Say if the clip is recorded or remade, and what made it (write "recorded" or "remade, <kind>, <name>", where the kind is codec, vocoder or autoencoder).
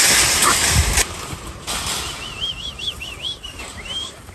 recorded